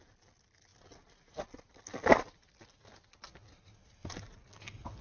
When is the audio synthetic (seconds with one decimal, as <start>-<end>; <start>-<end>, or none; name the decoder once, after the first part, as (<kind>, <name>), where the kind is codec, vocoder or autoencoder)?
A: none